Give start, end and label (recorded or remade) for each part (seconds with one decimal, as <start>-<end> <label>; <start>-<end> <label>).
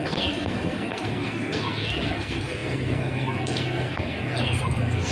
0.0-5.1 remade